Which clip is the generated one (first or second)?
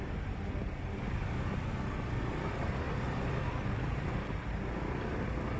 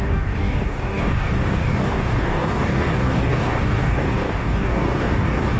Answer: second